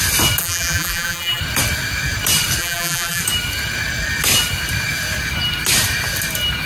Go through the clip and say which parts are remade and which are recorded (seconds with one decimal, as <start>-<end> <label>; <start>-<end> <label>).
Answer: 0.0-0.4 recorded; 0.4-1.4 remade; 1.4-2.6 recorded; 2.6-3.2 remade; 3.2-6.7 recorded